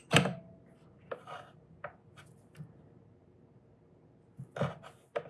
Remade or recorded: recorded